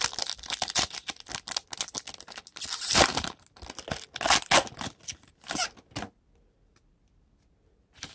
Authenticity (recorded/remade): recorded